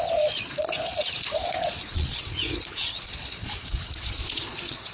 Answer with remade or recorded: remade